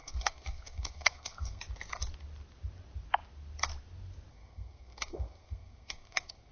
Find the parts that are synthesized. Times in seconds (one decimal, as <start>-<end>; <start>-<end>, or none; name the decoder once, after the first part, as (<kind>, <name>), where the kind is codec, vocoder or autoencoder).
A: 0.0-1.6 (codec, SNAC); 4.3-6.5